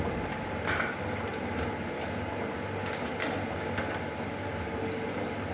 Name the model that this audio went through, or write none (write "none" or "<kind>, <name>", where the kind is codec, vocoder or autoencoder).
none